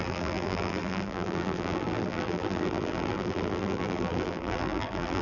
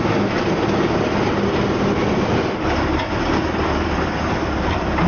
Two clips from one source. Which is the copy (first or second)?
first